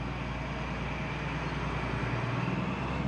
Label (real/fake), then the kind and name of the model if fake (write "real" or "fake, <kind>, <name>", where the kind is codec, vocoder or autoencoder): real